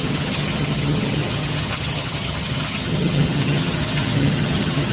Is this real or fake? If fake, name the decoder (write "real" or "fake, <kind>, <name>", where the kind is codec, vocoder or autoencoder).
fake, vocoder, HiFi-GAN